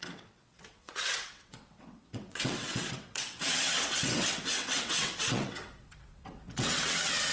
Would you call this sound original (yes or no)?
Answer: no